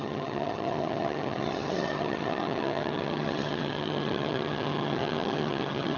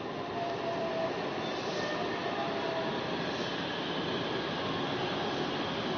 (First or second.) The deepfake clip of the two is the first